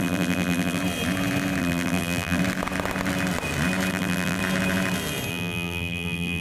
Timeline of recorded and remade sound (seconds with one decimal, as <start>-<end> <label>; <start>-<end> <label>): 0.0-0.8 remade; 0.8-1.6 recorded; 1.6-2.4 remade; 2.4-3.9 recorded; 3.9-4.4 remade; 4.4-5.3 recorded; 5.3-6.4 remade